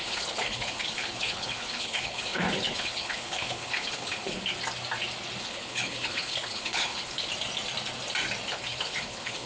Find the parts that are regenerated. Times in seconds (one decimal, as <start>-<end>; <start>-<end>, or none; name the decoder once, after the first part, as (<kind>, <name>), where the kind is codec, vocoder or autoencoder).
0.0-4.4 (codec, HILCodec); 5.4-7.3; 8.5-9.5

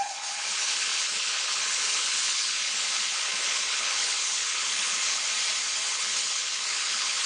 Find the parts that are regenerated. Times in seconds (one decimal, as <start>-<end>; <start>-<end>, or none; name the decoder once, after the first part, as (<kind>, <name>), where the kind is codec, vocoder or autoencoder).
0.0-5.3 (codec, HILCodec); 5.9-7.3